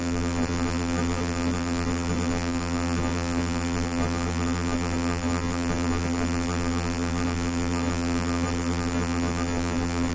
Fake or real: fake